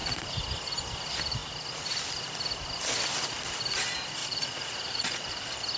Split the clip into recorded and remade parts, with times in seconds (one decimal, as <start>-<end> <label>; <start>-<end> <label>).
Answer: 0.0-4.2 recorded; 4.2-5.3 remade; 5.3-5.8 recorded